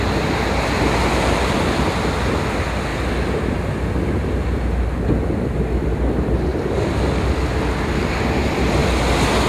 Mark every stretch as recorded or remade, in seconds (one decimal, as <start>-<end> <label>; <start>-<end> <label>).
0.0-9.5 recorded